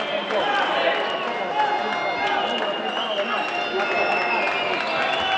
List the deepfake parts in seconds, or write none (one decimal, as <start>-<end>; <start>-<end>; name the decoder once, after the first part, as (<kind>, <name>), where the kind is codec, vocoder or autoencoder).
none